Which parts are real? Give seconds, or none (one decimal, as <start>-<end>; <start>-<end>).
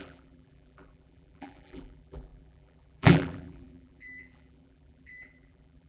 none